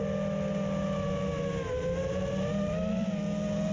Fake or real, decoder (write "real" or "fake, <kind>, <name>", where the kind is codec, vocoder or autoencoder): real